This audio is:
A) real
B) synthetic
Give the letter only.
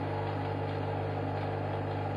A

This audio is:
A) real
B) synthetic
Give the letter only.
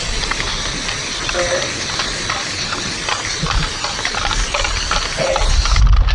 A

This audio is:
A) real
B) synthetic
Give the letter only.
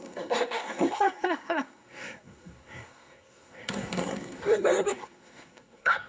B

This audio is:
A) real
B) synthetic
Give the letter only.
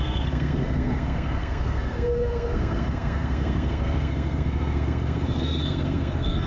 B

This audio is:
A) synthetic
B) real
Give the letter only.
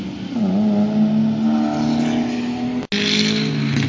B